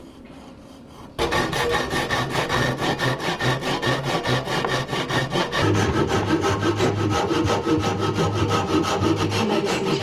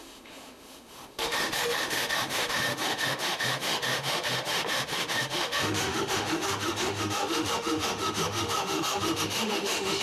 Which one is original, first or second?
first